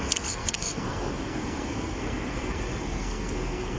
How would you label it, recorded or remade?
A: remade